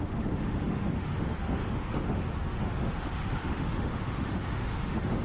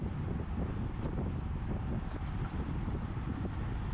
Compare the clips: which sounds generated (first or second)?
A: first